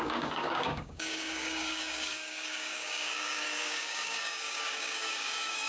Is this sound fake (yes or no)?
yes